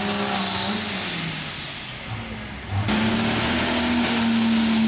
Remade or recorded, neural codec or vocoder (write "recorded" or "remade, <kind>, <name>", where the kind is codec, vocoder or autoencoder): recorded